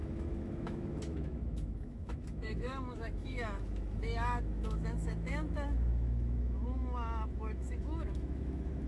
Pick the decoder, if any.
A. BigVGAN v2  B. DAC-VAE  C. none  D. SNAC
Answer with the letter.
B